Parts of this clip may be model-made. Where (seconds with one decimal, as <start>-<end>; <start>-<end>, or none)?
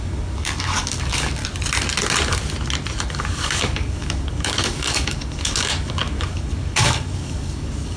0.0-1.4; 3.1-8.0